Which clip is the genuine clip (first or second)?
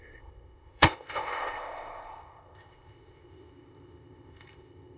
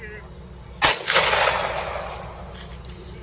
second